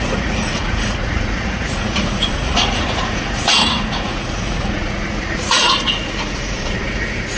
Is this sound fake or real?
fake